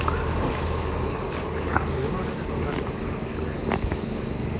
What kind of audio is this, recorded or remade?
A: remade